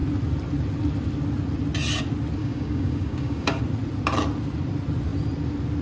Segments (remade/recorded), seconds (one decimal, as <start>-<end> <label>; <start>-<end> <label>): 0.0-2.4 recorded; 2.4-3.6 remade; 3.6-5.8 recorded